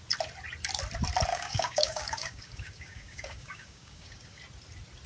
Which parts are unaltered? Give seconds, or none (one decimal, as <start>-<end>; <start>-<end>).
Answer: 0.0-1.3; 4.4-5.1